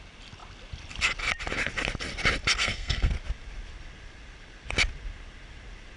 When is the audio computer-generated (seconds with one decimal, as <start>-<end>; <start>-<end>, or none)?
2.6-3.1